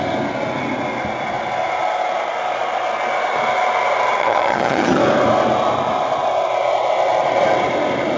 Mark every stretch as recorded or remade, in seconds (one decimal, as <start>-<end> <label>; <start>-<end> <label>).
0.0-4.2 recorded; 4.2-5.0 remade; 5.0-8.2 recorded